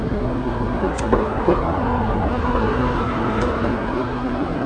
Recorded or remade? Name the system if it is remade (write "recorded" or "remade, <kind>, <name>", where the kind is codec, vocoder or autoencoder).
remade, codec, SNAC